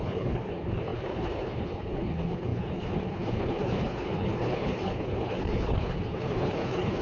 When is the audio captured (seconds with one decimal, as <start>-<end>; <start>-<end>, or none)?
none